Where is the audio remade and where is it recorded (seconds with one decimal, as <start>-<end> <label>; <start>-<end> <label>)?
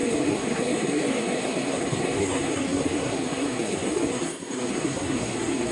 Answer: 0.0-5.7 remade